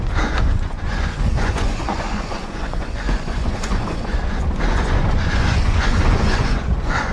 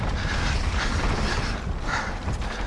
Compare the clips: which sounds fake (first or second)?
first